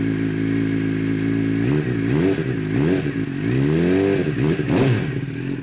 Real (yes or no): yes